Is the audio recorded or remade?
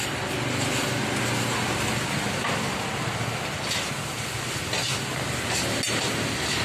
recorded